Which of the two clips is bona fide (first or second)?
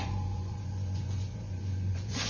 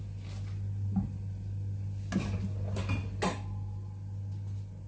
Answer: second